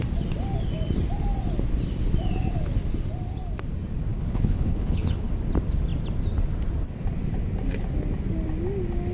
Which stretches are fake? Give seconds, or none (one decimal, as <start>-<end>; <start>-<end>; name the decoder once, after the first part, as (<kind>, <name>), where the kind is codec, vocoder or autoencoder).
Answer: 4.1-5.3 (codec, HILCodec)